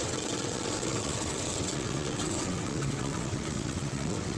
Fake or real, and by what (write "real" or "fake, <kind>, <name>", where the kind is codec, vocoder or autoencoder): fake, vocoder, WaveNeXt